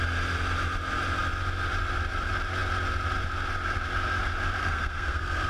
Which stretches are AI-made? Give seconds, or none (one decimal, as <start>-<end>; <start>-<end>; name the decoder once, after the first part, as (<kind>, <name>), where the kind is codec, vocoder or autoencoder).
4.6-5.5 (codec, SNAC)